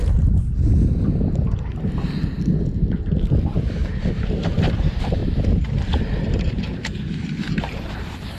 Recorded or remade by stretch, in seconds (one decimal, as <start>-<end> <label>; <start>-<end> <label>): 0.0-4.1 recorded; 4.1-5.2 remade; 5.2-6.5 recorded; 6.5-8.4 remade